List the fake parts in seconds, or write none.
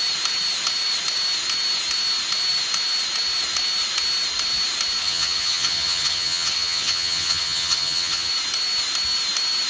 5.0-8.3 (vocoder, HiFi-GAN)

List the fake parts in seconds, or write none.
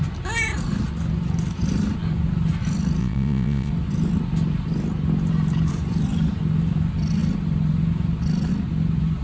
3.0-3.7 (vocoder, Vocos)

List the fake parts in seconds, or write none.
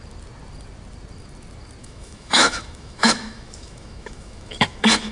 1.8-5.1 (autoencoder, DAC-VAE)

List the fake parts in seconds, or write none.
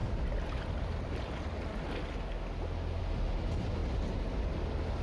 none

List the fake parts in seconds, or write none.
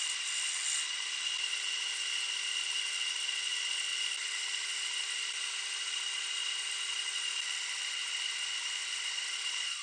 0.0-0.6 (vocoder, BigVGAN v2); 3.5-3.9; 5.0-9.8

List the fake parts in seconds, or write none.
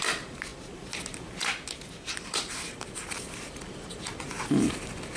none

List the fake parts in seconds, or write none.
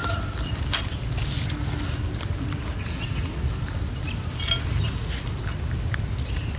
none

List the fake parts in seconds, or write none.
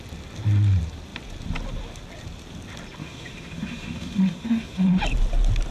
3.0-5.0 (autoencoder, DAC-VAE)